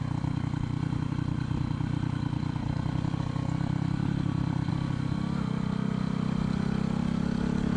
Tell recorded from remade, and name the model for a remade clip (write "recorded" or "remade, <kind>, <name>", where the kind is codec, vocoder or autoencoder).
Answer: recorded